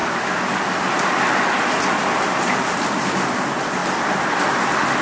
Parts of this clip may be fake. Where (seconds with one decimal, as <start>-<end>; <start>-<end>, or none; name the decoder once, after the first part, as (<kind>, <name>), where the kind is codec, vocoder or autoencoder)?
none